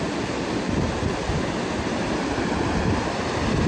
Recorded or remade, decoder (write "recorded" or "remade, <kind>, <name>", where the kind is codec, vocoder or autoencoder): recorded